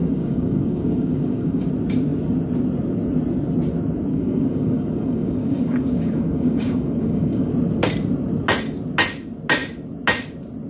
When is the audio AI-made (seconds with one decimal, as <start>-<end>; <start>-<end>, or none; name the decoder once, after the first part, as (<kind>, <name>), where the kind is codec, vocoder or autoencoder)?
0.0-1.7 (codec, DAC); 4.1-7.5